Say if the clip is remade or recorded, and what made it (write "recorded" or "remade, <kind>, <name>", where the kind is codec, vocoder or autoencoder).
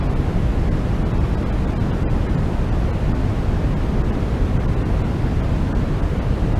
recorded